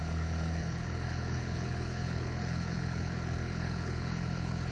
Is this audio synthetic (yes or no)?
yes